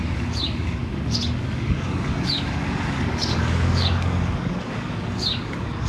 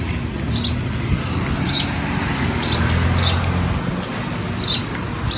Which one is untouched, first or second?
second